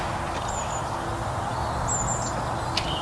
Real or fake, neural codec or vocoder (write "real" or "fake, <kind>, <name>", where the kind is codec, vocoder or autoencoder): real